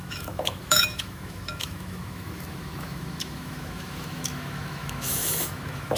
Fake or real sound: fake